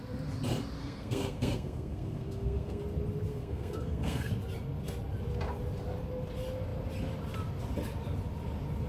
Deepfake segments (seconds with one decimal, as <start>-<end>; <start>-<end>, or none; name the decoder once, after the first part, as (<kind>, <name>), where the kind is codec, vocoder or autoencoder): 0.8-2.8 (codec, SNAC); 3.3-4.3

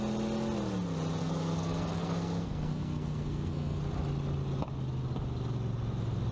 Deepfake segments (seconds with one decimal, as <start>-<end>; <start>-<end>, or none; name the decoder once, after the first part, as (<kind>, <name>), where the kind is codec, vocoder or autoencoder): 1.2-3.8 (codec, SNAC)